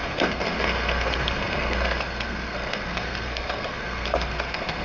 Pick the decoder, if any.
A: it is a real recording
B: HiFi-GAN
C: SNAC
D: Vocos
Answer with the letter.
C